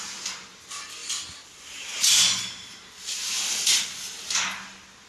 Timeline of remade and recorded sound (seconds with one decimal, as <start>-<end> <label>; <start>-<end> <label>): 0.0-5.1 recorded